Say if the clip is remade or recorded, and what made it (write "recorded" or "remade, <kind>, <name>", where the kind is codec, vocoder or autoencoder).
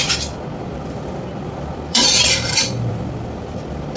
remade, vocoder, BigVGAN v2